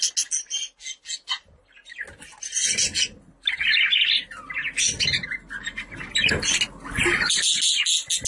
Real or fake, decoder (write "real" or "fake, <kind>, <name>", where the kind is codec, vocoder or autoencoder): real